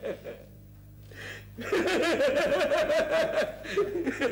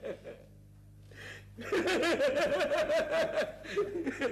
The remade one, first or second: first